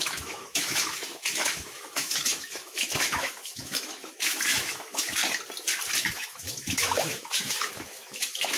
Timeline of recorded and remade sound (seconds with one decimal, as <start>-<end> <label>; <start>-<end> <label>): 0.0-5.2 remade; 5.2-6.0 recorded; 6.0-8.6 remade